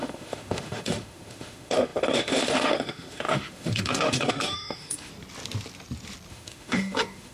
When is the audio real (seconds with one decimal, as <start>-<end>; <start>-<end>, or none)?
5.1-6.3